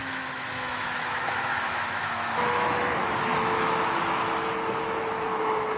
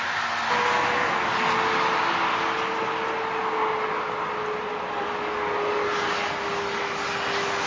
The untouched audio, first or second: second